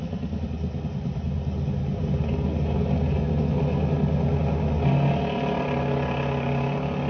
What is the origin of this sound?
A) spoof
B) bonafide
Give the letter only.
B